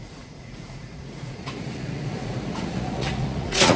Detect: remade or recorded remade